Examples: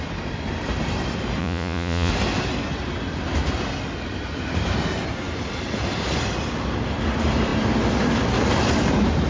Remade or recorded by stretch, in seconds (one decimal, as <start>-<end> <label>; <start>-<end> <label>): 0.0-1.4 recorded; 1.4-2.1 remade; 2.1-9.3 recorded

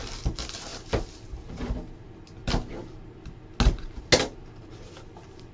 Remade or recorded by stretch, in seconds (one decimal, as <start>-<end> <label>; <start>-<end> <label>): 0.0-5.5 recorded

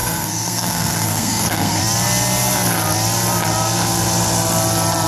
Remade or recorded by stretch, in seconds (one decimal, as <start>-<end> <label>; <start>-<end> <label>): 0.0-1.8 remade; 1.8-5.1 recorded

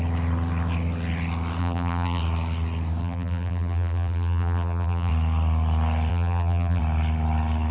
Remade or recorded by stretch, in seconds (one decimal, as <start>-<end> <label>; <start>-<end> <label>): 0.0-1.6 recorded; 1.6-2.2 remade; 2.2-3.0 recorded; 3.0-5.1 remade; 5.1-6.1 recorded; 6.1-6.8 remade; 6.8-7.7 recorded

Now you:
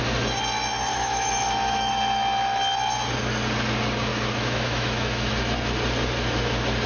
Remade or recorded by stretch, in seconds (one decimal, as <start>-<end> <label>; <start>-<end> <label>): 0.0-0.9 recorded; 0.9-1.9 remade; 1.9-4.1 recorded; 4.1-5.3 remade; 5.3-6.9 recorded